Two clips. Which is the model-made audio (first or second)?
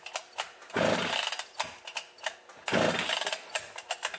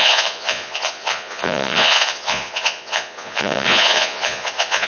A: second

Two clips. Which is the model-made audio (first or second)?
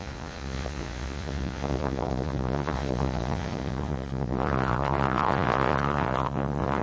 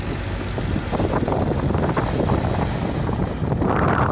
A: first